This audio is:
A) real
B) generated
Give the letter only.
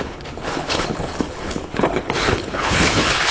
B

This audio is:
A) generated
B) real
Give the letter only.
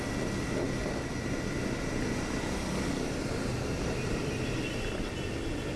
B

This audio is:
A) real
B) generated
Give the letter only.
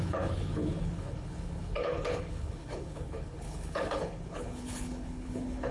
B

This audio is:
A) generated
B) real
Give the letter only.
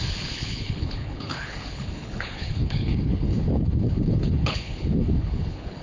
A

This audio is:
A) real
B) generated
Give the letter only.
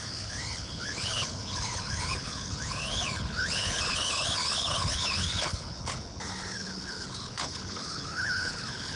B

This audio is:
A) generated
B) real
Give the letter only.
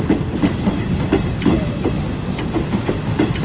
B